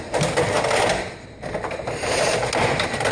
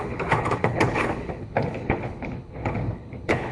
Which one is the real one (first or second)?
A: first